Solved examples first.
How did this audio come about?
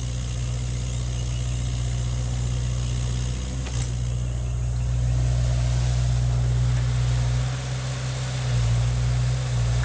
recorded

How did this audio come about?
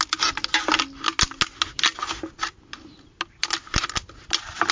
recorded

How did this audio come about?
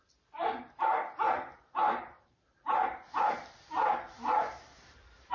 remade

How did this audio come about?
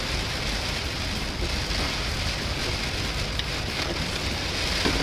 recorded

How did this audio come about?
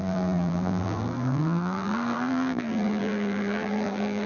remade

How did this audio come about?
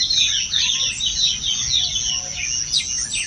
recorded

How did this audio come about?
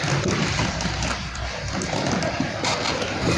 remade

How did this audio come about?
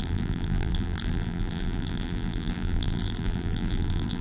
remade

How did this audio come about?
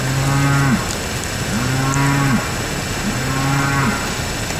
recorded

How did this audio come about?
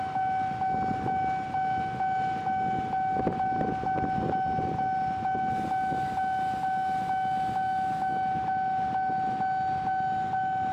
recorded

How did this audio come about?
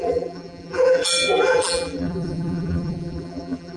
remade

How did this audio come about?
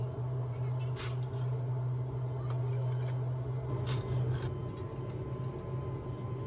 recorded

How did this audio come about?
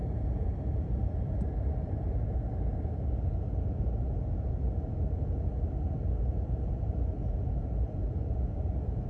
remade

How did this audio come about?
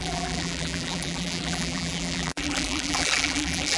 remade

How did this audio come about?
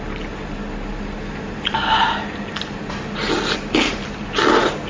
recorded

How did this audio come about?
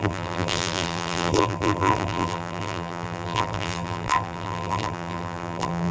remade